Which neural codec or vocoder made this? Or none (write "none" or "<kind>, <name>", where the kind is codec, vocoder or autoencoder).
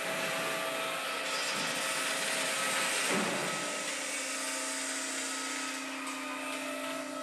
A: none